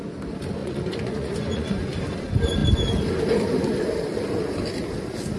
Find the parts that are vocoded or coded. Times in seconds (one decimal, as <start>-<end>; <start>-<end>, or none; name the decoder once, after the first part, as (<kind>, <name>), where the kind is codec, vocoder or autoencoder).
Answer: 0.6-2.0 (vocoder, Vocos)